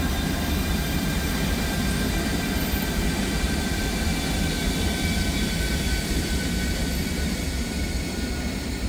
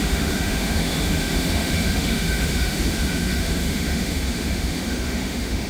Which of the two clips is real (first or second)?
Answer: first